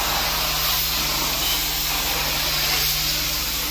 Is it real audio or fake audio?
real